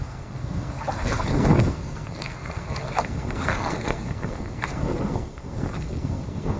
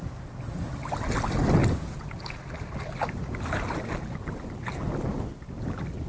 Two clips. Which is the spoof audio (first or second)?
first